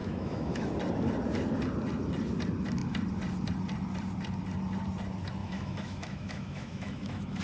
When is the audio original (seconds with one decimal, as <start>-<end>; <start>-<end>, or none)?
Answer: 0.7-5.4